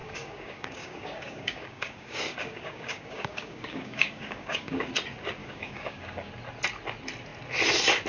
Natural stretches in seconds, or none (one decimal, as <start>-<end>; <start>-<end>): 4.9-5.4; 6.3-8.1